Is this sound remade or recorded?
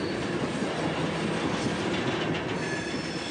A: recorded